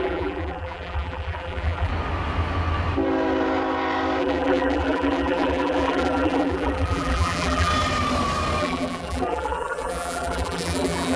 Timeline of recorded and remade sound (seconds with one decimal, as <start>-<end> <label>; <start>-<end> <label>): 0.0-1.9 remade; 1.9-4.2 recorded; 4.2-7.7 remade; 7.7-8.6 recorded; 8.6-11.2 remade